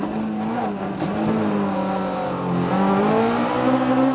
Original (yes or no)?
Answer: yes